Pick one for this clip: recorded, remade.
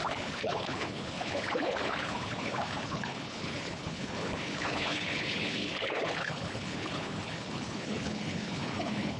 remade